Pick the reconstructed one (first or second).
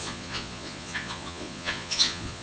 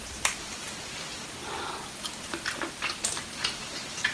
first